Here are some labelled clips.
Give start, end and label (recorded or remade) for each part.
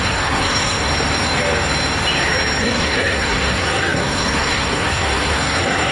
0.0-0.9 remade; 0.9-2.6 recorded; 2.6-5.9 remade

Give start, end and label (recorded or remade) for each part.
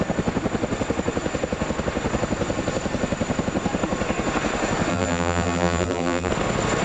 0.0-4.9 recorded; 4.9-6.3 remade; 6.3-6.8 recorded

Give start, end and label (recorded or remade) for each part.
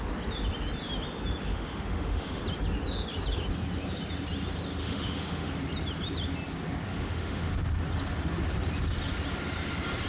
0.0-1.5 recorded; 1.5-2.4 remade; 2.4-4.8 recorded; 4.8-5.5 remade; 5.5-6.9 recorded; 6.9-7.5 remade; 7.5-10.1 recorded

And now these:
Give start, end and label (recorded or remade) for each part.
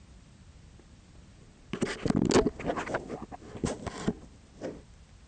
0.0-5.3 recorded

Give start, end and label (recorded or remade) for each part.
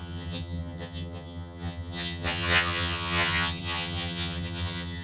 0.0-5.0 remade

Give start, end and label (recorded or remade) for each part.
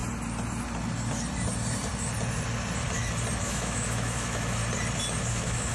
0.0-3.4 recorded; 3.4-4.6 remade; 4.6-5.3 recorded; 5.3-5.7 remade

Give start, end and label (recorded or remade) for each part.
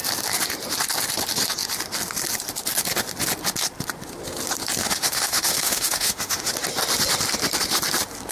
0.0-4.8 recorded; 4.8-6.5 remade; 6.5-8.3 recorded